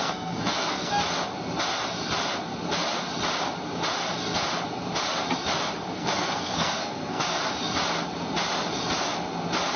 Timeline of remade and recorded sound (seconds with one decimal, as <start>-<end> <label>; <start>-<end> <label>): 0.0-0.9 remade; 0.9-5.9 recorded; 5.9-7.4 remade; 7.4-9.8 recorded